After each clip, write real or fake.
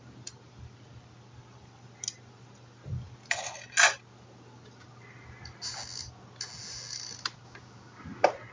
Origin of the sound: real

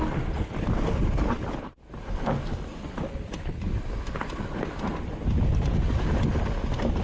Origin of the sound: real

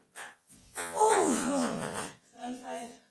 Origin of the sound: fake